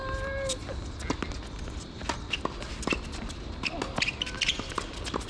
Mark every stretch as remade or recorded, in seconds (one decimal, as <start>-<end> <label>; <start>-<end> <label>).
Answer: 0.0-5.3 recorded